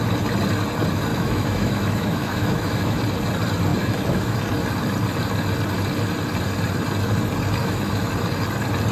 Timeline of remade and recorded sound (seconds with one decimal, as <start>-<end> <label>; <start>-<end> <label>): 0.0-1.1 recorded; 1.1-3.0 remade; 3.0-3.7 recorded; 3.7-4.4 remade; 4.4-7.6 recorded; 7.6-8.1 remade; 8.1-8.9 recorded